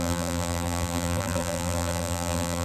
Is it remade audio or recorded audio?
remade